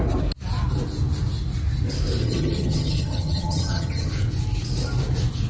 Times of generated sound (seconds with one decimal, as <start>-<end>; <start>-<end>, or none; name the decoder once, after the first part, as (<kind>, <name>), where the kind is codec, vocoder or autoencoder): 2.2-4.1 (vocoder, HiFi-GAN)